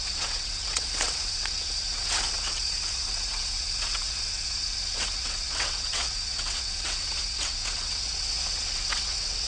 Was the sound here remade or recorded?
remade